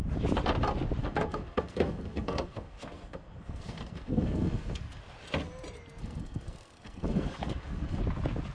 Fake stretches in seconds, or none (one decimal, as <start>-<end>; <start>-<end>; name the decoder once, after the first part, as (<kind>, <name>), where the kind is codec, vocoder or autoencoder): 1.0-5.0 (codec, SNAC); 6.0-8.0